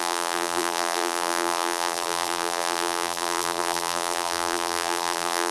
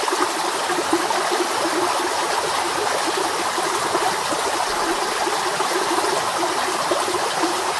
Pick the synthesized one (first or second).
first